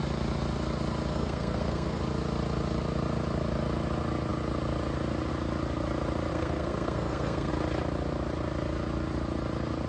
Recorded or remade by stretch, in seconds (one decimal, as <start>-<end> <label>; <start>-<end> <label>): 0.0-1.1 recorded; 1.1-2.0 remade; 2.0-6.3 recorded; 6.3-7.5 remade; 7.5-9.9 recorded